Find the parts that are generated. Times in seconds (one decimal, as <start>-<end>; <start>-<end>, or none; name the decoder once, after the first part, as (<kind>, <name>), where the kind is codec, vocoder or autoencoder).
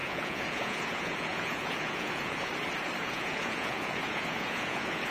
0.0-2.5 (vocoder, Vocos); 3.0-5.1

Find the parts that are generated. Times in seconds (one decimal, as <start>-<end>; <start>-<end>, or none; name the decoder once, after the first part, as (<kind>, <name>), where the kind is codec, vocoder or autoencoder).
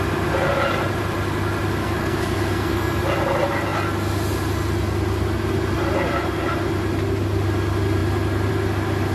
1.8-3.0 (codec, SNAC)